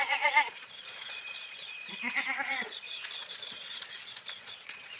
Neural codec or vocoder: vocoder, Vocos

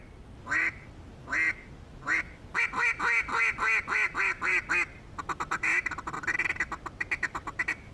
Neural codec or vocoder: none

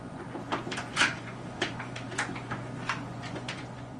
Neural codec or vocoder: vocoder, Vocos